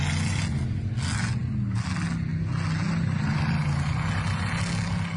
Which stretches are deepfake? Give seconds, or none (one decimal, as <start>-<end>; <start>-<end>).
none